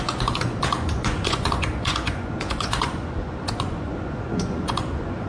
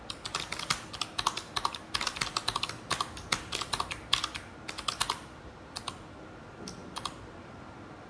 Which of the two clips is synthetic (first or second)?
first